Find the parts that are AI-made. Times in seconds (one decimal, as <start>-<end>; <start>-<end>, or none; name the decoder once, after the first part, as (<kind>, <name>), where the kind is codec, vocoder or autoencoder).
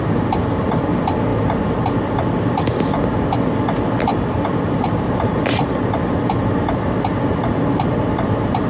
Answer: 1.3-1.9 (vocoder, BigVGAN v2); 4.1-5.7